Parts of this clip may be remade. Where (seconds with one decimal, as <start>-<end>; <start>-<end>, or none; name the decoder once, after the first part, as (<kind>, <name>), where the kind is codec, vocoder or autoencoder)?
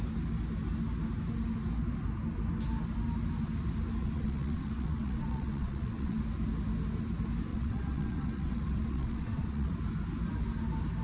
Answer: 4.0-6.2 (vocoder, WaveNeXt); 7.5-9.7